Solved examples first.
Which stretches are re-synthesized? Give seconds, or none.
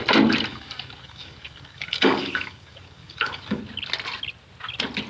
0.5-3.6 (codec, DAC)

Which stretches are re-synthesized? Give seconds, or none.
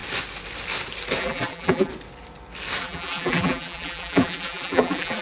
1.2-1.9 (vocoder, BigVGAN v2); 2.8-5.2